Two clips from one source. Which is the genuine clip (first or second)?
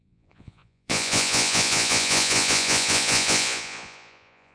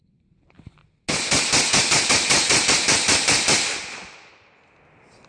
second